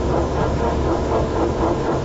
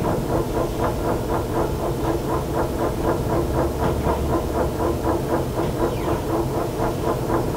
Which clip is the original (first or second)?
second